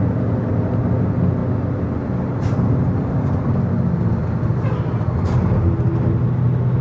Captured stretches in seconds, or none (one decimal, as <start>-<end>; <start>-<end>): 0.0-6.8